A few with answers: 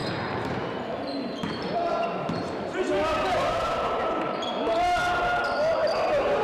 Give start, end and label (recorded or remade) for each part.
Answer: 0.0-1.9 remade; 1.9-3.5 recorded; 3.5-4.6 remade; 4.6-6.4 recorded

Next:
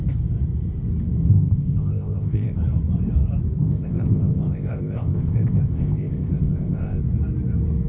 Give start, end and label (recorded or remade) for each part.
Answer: 0.0-1.3 recorded; 1.3-2.6 remade; 2.6-3.6 recorded; 3.6-7.0 remade; 7.0-7.9 recorded

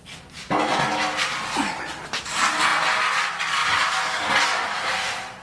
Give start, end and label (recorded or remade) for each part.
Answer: 0.0-5.4 recorded